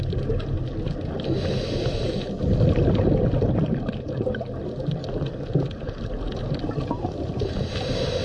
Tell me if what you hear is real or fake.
real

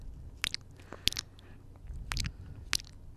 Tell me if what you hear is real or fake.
real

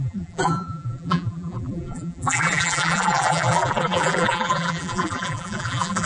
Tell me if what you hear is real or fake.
fake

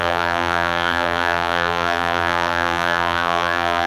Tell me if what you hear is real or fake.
fake